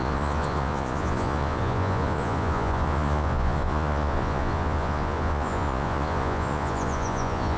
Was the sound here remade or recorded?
remade